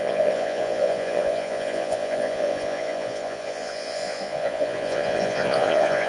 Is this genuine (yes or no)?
no